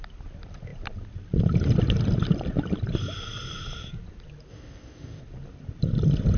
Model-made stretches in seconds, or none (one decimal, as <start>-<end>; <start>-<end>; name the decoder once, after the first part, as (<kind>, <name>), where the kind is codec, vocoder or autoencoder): 4.5-5.2 (codec, ZipCodec)